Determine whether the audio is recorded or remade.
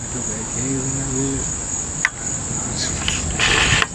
recorded